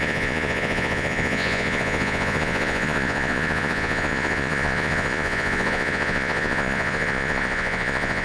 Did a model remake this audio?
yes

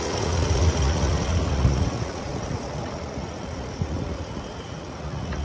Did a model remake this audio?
yes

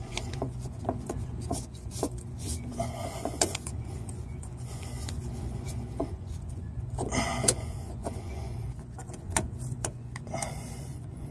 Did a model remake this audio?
yes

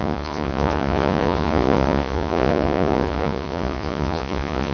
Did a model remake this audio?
yes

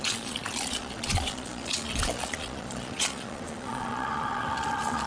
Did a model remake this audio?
yes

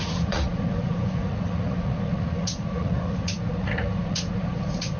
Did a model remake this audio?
yes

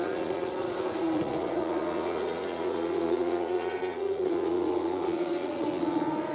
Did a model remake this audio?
yes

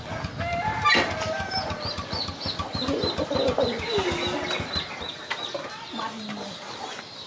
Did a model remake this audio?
no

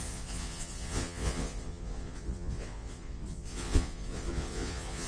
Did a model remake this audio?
yes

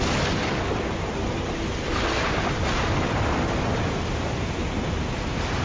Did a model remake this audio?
no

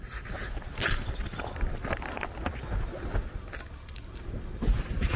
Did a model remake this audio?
no